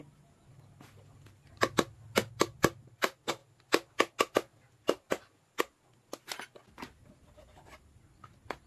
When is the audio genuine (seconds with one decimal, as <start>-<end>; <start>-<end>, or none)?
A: 0.0-8.7